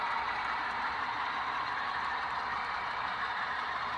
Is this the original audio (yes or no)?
no